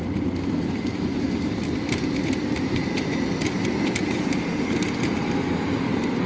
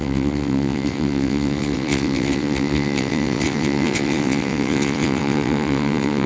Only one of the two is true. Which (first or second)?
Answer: first